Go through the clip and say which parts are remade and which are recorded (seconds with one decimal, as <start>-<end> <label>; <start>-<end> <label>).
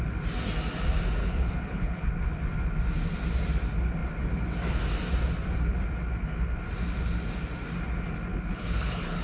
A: 0.0-1.2 recorded; 1.2-2.1 remade; 2.1-8.5 recorded; 8.5-9.2 remade